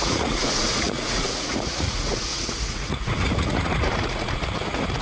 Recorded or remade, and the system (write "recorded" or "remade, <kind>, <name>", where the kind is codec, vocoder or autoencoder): remade, vocoder, Vocos